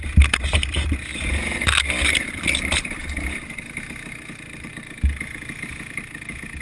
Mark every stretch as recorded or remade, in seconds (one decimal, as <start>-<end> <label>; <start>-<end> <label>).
0.0-6.6 recorded